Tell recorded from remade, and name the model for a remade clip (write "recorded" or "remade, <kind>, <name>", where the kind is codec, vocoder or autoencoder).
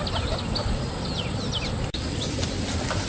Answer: recorded